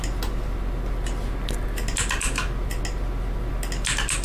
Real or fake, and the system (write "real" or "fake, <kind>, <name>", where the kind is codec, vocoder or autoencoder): real